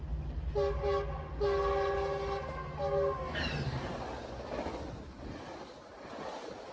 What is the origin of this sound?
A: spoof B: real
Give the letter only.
B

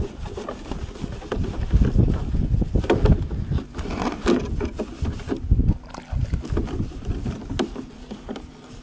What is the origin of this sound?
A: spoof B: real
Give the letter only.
B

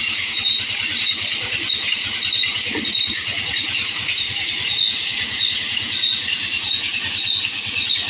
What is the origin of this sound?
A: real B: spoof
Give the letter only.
B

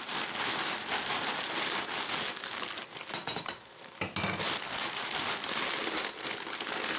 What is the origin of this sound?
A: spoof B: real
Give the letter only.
B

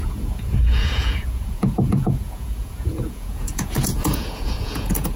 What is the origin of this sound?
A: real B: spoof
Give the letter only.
B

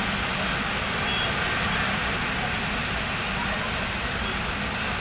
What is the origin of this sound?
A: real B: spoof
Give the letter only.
A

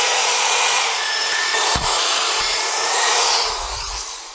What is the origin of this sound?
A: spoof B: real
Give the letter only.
A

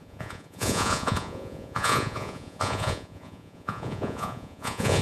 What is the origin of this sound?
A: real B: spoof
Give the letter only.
B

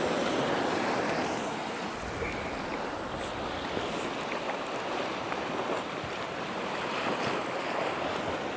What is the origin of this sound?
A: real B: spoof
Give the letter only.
A